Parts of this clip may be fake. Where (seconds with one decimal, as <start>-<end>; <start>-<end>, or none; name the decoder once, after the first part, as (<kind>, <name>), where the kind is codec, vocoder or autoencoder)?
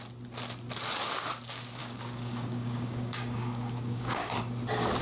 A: 1.8-4.4 (codec, DAC)